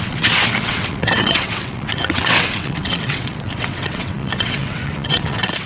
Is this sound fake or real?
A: fake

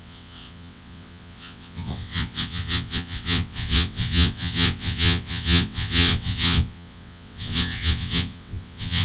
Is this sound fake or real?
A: fake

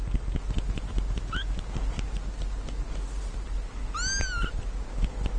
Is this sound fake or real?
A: real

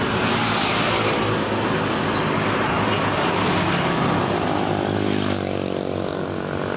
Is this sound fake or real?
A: real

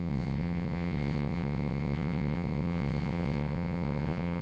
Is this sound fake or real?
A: fake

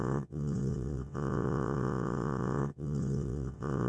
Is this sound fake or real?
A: fake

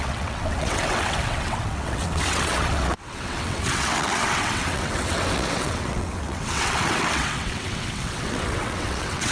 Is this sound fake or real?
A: fake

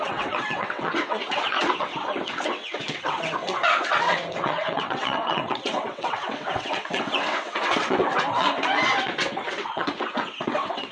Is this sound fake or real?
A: fake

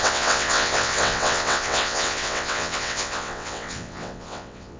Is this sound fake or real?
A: fake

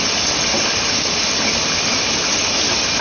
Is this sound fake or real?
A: real